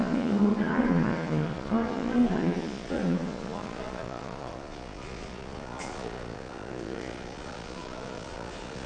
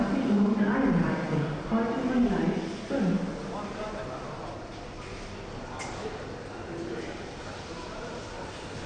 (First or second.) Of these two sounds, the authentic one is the second